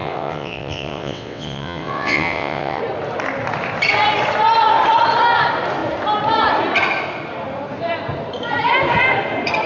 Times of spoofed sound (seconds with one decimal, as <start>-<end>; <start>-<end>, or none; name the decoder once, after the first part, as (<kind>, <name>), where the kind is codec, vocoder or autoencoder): 0.0-2.8 (vocoder, WaveNeXt)